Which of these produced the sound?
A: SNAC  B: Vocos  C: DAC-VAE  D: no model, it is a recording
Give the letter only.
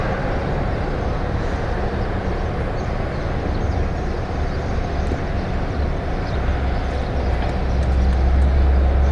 D